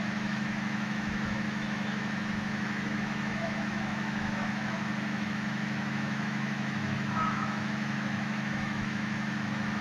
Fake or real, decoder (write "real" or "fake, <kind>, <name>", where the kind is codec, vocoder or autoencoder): fake, autoencoder, DAC-VAE